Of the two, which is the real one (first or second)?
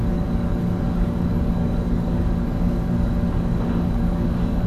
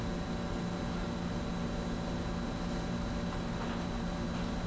second